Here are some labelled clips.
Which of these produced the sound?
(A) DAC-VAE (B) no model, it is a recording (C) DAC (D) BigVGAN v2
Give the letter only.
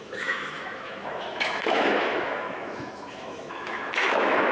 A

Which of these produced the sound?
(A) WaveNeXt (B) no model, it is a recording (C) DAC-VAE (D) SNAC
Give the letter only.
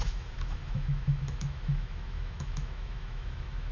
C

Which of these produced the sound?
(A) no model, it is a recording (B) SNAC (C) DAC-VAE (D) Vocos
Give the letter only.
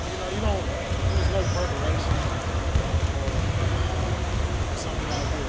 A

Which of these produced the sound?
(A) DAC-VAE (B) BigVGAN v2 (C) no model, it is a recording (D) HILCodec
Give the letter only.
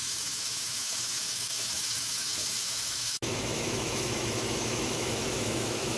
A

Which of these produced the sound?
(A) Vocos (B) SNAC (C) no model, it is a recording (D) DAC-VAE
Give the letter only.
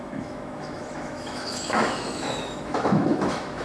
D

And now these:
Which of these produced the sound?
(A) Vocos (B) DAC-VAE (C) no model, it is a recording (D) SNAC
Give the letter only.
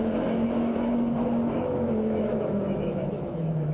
B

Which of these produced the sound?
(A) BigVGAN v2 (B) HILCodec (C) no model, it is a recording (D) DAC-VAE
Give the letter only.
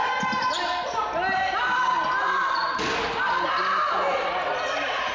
C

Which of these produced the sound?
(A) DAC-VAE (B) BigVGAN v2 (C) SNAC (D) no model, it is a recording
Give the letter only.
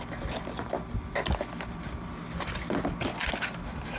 D